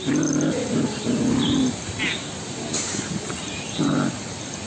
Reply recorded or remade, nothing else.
recorded